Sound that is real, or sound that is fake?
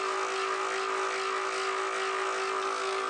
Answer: real